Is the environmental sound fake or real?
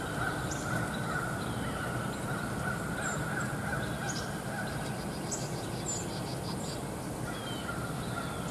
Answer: real